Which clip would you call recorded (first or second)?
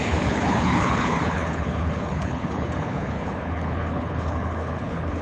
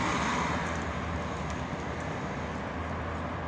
second